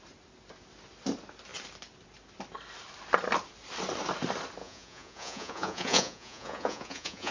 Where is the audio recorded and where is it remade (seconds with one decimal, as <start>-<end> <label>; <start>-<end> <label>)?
0.0-4.6 recorded; 4.6-7.3 remade